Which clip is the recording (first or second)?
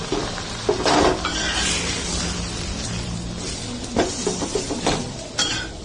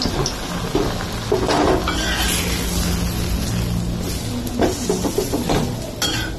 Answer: second